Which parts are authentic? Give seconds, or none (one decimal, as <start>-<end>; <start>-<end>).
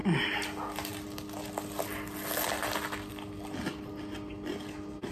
0.0-5.1